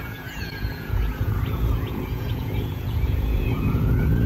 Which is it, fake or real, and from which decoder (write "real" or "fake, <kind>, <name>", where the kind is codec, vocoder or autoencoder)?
fake, vocoder, Vocos